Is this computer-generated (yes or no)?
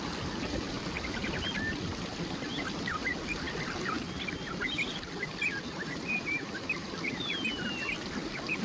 yes